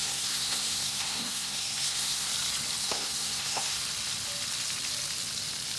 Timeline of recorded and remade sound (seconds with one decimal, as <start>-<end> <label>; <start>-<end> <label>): 0.0-2.3 remade; 2.3-2.8 recorded; 2.8-3.8 remade; 3.8-5.8 recorded